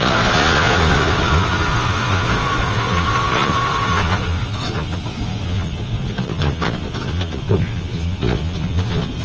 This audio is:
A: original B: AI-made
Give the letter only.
B